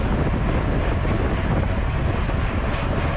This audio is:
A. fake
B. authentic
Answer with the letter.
B